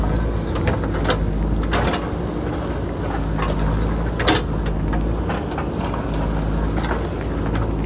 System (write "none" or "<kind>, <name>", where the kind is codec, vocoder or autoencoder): none